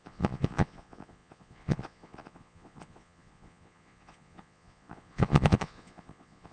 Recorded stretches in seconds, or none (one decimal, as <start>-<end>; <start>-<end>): none